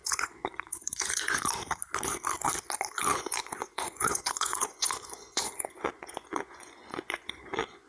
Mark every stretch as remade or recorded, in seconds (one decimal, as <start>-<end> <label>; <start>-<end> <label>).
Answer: 0.0-1.5 remade; 1.5-3.1 recorded; 3.1-7.9 remade